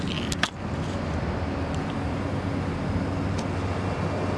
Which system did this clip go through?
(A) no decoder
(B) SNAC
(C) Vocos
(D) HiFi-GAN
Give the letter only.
A